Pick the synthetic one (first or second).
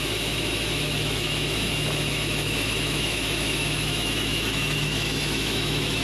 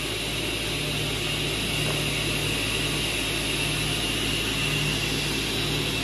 first